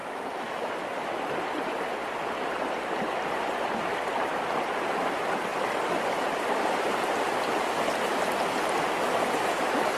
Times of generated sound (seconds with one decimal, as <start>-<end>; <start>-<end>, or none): 0.0-0.7